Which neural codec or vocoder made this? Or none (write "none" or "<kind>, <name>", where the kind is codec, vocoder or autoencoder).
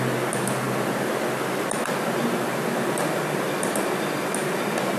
none